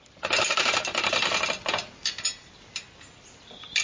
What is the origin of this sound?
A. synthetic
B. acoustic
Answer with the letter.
B